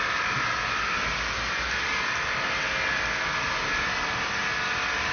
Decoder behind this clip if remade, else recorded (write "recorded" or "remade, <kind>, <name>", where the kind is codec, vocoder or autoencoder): recorded